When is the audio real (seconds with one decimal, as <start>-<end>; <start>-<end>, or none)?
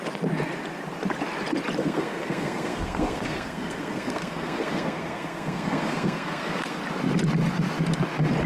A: 0.0-1.8; 6.8-8.5